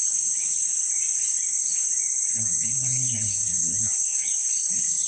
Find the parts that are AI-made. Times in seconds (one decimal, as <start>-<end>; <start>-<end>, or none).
0.0-0.7; 2.3-5.1